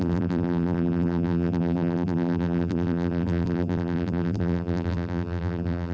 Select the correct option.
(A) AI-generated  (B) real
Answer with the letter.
A